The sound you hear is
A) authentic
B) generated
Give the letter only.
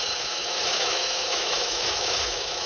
B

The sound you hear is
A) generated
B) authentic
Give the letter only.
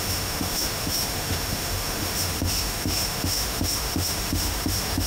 A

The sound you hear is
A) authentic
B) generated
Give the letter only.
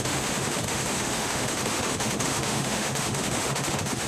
B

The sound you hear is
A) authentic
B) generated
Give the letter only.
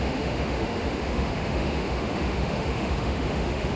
B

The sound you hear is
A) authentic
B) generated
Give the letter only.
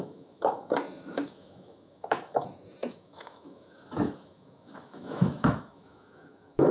B